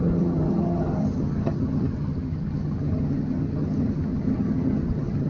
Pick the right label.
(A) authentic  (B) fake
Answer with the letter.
B